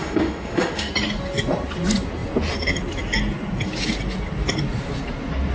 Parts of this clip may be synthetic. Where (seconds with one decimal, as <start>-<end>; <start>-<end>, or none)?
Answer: 0.0-0.9